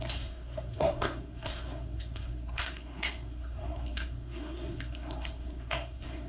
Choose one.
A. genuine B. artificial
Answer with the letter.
B